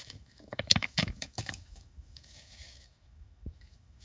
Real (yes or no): no